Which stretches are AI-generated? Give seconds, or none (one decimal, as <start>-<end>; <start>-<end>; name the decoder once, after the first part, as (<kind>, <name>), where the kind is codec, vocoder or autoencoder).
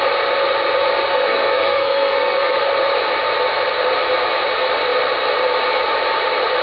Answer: 1.1-2.7 (codec, SNAC)